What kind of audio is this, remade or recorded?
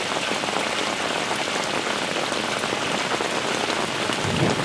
recorded